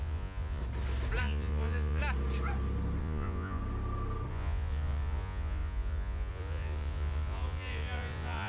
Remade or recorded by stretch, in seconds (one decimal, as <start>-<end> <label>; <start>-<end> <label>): 0.0-0.6 remade; 0.6-1.2 recorded; 1.2-2.0 remade; 2.0-3.0 recorded; 3.0-3.6 remade; 3.6-4.3 recorded; 4.3-8.5 remade